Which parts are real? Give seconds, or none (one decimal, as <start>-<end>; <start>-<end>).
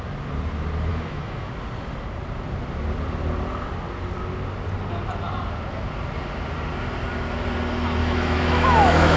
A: 0.0-0.9; 1.5-8.0